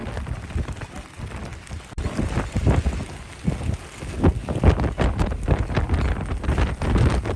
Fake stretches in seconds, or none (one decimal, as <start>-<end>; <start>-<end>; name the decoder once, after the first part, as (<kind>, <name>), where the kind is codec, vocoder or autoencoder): 1.5-2.1 (vocoder, BigVGAN v2); 4.4-5.2